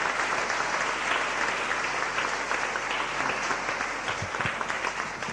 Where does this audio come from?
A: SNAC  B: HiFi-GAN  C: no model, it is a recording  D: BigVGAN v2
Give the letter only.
C